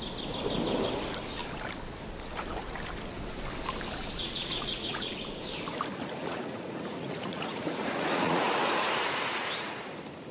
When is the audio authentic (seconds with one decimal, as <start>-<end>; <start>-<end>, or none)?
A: 0.0-4.2; 5.1-6.2; 9.8-10.3